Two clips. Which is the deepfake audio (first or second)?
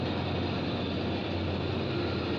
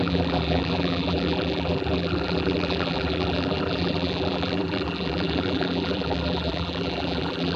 second